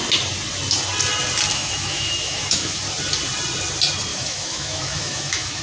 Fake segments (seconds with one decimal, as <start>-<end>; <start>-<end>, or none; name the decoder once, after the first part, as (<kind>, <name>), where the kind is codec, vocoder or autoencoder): 1.5-2.8 (autoencoder, DAC-VAE); 4.1-5.6